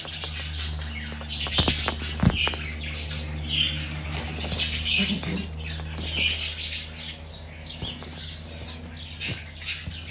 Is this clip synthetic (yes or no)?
no